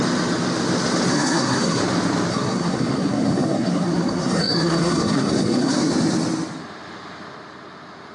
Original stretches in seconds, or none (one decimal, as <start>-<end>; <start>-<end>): 0.0-1.1; 1.8-2.3; 5.9-8.1